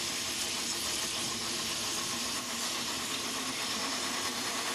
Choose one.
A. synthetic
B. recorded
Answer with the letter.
A